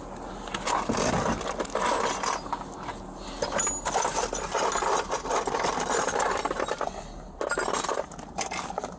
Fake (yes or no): no